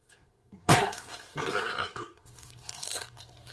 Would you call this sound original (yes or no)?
no